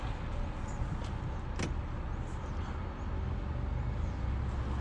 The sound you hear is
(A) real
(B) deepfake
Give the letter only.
A